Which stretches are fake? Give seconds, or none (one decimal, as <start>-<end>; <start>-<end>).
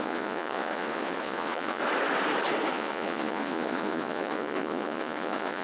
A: 0.0-1.8; 2.7-5.6